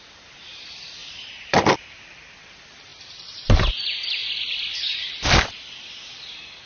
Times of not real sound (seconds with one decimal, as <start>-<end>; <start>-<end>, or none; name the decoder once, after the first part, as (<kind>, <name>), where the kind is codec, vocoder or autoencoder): 1.0-2.3 (vocoder, BigVGAN v2); 2.9-3.7; 4.2-5.1